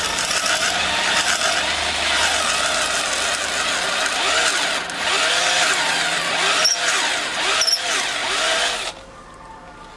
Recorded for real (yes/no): yes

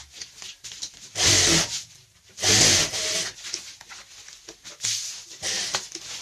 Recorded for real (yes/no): yes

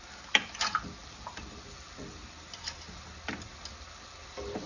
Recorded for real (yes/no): yes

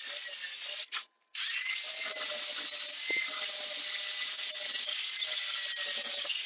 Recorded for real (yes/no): yes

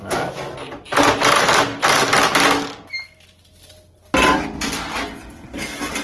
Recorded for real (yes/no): yes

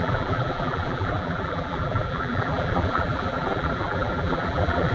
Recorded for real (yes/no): no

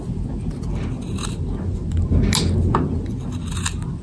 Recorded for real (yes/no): yes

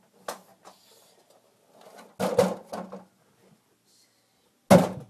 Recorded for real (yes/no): yes